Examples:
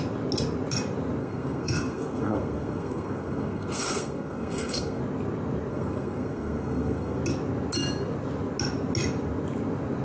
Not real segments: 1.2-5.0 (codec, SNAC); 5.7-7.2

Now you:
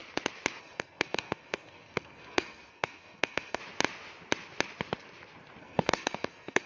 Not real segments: 0.6-3.6 (codec, SNAC); 5.6-6.7

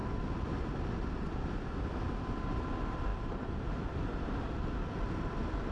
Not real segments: 3.1-3.7 (vocoder, BigVGAN v2)

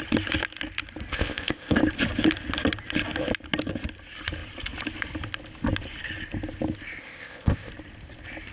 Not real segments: 1.1-1.8 (codec, ZipCodec); 7.0-7.7

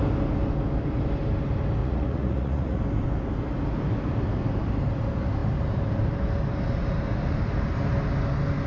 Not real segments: 1.8-2.8 (vocoder, Vocos)

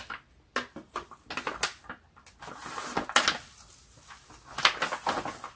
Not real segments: none

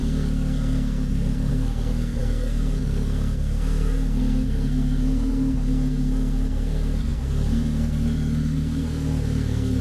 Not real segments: 0.0-9.8 (codec, SNAC)

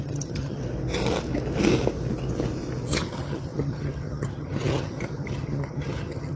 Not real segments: 0.0-0.6 (vocoder, HiFi-GAN); 2.9-6.4